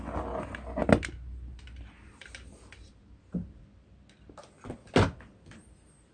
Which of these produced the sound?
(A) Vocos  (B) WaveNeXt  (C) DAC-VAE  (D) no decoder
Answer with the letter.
D